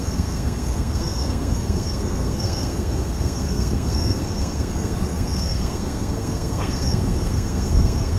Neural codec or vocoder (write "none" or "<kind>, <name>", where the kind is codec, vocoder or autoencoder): codec, SNAC